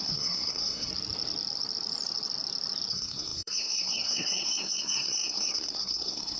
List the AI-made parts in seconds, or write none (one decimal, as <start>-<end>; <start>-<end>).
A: 0.0-0.9; 2.9-6.4